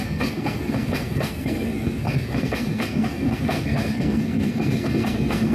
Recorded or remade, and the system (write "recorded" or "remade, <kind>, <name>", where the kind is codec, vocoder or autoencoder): remade, codec, SNAC